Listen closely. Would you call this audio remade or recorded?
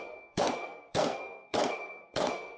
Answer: remade